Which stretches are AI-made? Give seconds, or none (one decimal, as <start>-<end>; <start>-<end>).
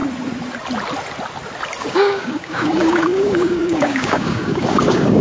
1.8-5.2